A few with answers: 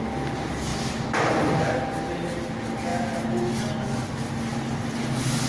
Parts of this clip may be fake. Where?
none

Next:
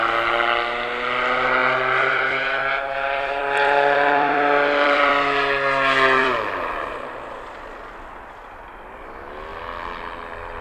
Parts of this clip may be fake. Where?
1.6-5.1; 6.2-7.7